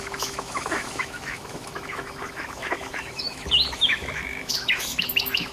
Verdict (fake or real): fake